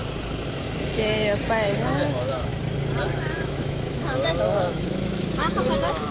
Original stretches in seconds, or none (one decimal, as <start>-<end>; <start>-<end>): 0.0-1.8; 2.5-3.2